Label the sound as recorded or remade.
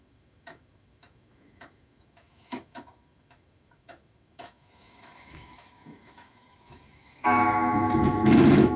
remade